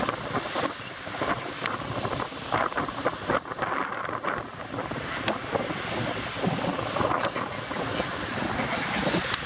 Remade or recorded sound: recorded